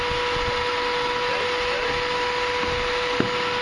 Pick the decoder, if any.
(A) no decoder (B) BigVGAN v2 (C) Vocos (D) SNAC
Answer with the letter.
A